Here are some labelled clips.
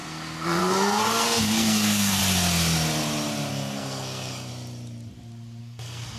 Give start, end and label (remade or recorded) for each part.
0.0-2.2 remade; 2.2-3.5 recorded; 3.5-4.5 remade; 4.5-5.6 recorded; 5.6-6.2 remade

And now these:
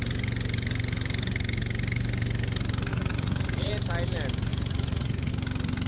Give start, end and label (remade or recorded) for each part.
0.0-2.9 recorded; 2.9-3.7 remade; 3.7-4.5 recorded; 4.5-5.3 remade; 5.3-5.9 recorded

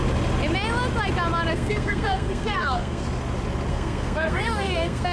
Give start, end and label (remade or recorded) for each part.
0.0-1.5 recorded; 1.5-3.0 remade; 3.0-3.7 recorded; 3.7-5.1 remade